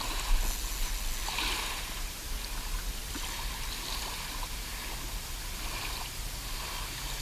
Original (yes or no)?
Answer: yes